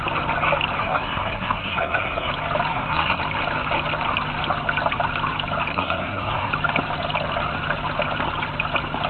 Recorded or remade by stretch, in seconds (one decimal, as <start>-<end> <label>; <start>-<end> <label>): 0.0-0.8 recorded; 0.8-2.3 remade; 2.3-2.7 recorded; 2.7-3.2 remade; 3.2-5.7 recorded; 5.7-6.5 remade; 6.5-9.1 recorded